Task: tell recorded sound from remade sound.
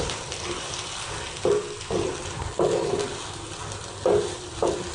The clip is recorded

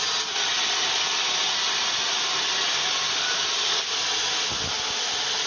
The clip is recorded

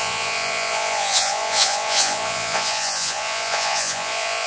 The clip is remade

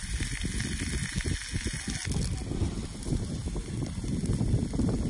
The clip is recorded